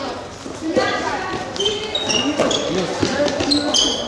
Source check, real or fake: real